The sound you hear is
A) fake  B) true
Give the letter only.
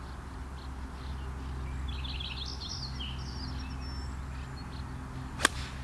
B